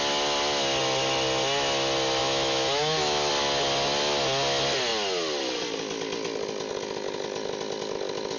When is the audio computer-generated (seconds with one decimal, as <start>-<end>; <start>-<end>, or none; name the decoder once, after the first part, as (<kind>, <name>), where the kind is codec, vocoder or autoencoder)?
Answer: 2.2-3.3 (autoencoder, DAC-VAE)